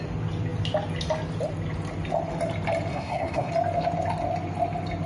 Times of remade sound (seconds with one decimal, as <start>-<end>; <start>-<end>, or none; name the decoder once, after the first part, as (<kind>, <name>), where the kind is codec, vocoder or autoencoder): 2.9-3.5 (codec, SNAC)